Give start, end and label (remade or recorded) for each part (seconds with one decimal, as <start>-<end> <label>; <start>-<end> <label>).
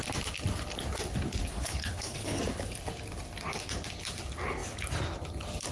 0.0-1.5 recorded; 1.5-2.4 remade; 2.4-5.7 recorded